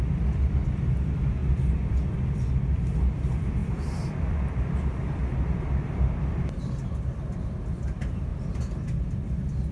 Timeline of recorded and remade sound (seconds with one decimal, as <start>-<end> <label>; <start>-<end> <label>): 0.0-1.4 remade; 1.4-2.5 recorded; 2.5-8.3 remade; 8.3-9.7 recorded